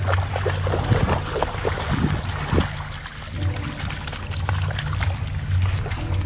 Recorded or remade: recorded